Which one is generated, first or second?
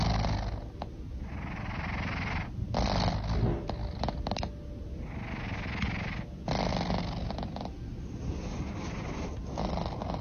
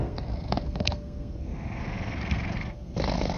second